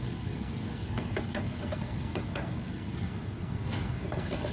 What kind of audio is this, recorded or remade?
remade